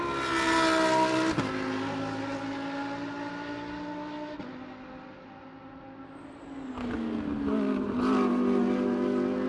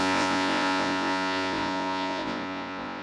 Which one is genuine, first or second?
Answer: first